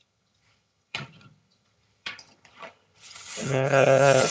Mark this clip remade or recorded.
remade